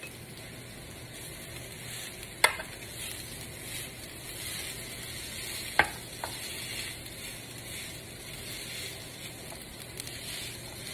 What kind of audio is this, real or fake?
real